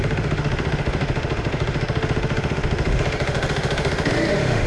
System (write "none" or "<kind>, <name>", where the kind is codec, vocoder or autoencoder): autoencoder, DAC-VAE